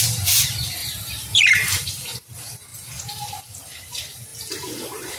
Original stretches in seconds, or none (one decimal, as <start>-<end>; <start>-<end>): 0.0-0.8; 1.9-4.3